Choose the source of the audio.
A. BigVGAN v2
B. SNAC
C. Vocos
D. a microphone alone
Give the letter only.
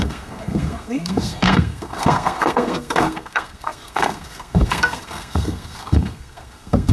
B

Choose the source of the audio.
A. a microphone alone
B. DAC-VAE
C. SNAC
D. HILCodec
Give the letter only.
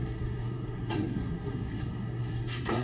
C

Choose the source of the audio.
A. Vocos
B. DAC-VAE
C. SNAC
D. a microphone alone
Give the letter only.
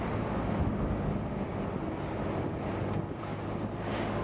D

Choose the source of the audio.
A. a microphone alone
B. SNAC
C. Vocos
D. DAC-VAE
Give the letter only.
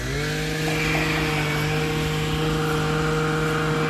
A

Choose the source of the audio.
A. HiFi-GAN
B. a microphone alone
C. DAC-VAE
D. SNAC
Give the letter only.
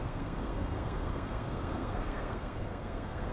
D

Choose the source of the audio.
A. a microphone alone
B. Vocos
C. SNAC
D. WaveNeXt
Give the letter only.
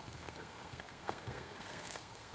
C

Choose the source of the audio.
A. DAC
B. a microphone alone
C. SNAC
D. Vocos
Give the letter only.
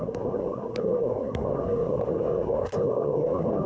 C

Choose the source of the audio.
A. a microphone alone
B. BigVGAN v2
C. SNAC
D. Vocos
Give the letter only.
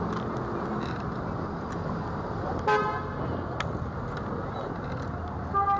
A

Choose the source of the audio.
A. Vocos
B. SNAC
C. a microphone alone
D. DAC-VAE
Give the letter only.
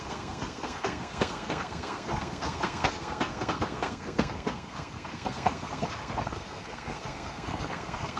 B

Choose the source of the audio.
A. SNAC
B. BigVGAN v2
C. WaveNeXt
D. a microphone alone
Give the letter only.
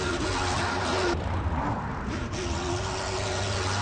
D